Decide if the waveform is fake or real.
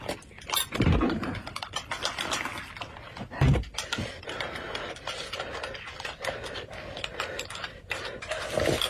real